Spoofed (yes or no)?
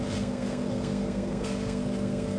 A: yes